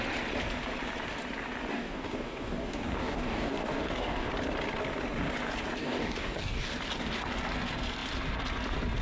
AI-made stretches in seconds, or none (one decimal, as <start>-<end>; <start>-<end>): 1.7-4.3; 5.8-6.7